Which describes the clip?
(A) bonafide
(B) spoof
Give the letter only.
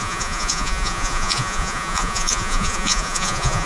B